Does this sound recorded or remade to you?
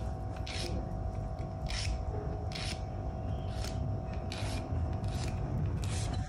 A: recorded